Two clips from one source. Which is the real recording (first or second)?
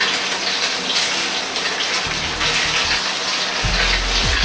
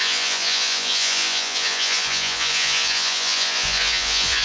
first